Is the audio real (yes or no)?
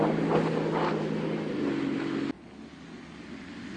yes